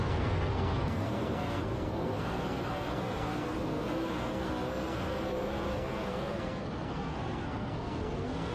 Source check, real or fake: fake